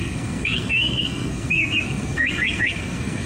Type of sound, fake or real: fake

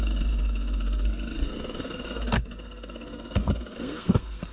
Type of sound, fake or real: fake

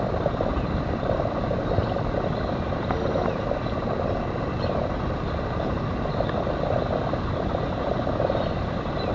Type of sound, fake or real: real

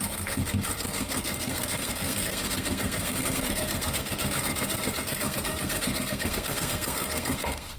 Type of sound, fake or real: fake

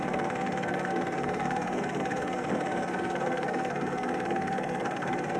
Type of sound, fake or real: fake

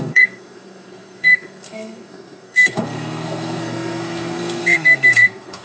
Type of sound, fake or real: fake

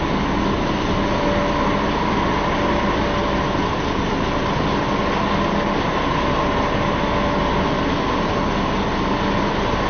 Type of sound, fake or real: real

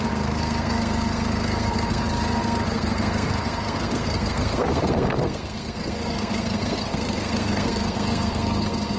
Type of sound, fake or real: fake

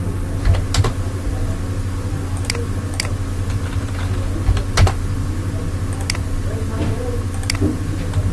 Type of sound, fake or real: real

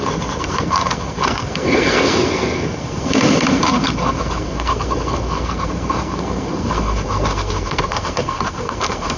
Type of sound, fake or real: fake